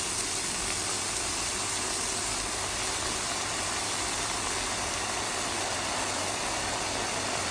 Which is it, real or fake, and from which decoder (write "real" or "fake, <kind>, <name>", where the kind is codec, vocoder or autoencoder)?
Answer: real